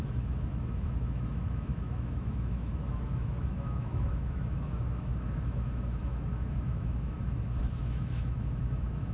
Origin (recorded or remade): remade